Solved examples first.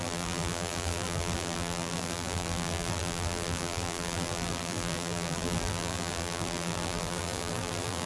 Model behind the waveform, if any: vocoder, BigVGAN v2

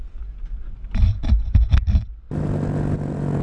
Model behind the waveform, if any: none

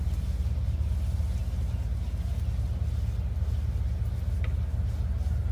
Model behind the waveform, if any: none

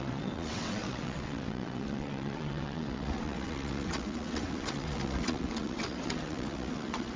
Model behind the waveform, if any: vocoder, WaveNeXt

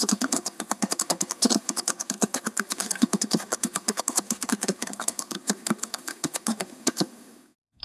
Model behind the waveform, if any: codec, SNAC